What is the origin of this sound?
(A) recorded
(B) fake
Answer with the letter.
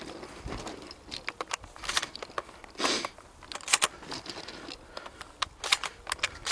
A